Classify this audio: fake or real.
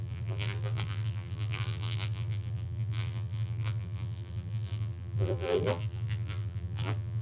fake